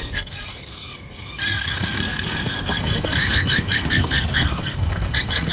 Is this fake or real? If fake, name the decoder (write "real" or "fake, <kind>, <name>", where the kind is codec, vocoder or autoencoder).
fake, codec, SNAC